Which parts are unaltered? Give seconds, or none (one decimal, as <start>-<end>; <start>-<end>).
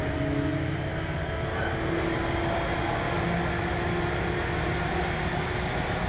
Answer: 0.0-6.1